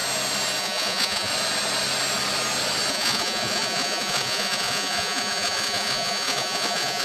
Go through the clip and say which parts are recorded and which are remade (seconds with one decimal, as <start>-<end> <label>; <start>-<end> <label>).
0.0-0.6 recorded; 0.6-1.3 remade; 1.3-2.9 recorded; 2.9-7.0 remade